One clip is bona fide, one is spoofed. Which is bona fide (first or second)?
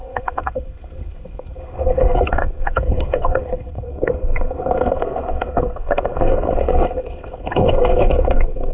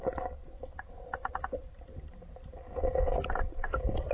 second